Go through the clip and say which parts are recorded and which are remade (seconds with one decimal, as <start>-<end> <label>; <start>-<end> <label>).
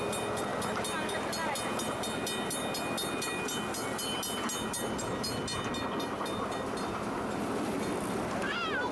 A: 0.0-8.9 recorded